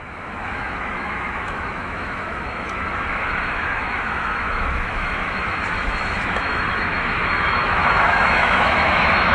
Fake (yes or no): yes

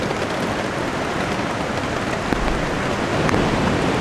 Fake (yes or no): no